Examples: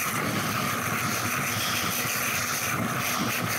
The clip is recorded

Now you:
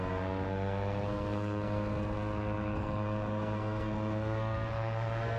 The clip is remade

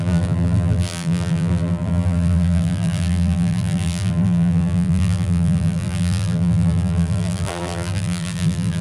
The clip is remade